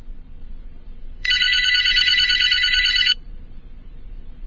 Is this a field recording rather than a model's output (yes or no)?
no